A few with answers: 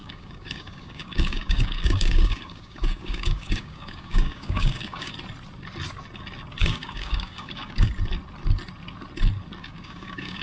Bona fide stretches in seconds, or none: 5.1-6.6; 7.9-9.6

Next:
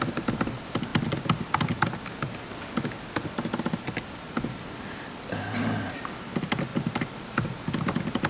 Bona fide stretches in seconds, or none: 0.0-8.3

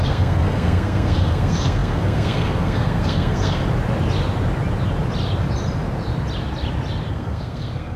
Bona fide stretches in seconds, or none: 3.6-7.1

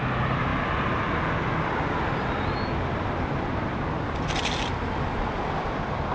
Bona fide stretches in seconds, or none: 0.0-6.1

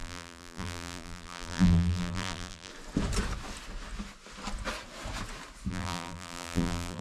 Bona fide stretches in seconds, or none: 2.7-5.7

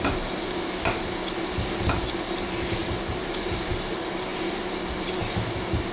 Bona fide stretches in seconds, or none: 0.0-5.9

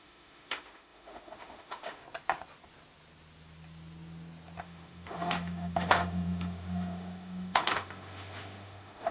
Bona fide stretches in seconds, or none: 2.0-4.6